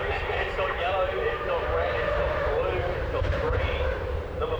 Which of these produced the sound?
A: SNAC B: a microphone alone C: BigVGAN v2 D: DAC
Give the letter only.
C